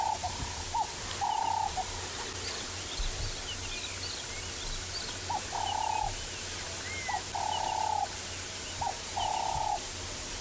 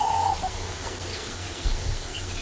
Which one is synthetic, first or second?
second